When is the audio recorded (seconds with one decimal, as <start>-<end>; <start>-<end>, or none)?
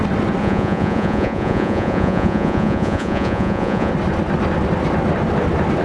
0.0-0.4; 3.9-5.8